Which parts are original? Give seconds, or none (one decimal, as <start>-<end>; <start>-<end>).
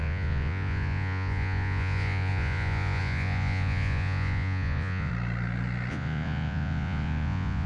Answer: 5.1-5.9